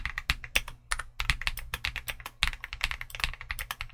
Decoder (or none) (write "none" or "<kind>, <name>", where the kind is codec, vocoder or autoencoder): none